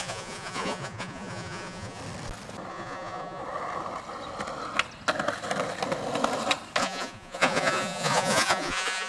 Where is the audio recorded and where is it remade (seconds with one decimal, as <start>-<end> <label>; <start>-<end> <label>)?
0.0-2.0 remade; 2.0-2.7 recorded; 2.7-3.4 remade; 3.4-6.8 recorded; 6.8-9.1 remade